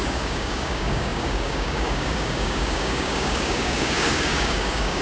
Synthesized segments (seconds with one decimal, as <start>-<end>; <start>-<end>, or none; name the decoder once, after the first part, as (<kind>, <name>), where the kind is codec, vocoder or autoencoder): 0.0-5.0 (codec, DAC)